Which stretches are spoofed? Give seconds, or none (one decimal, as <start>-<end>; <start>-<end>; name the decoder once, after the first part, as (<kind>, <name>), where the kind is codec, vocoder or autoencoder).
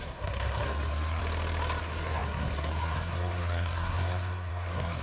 0.0-1.2 (codec, SNAC); 1.8-5.0